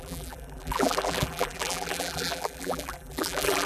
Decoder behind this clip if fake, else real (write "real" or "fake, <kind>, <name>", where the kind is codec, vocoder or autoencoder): fake, vocoder, BigVGAN v2